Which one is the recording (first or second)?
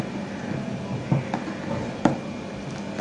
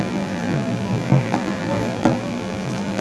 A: first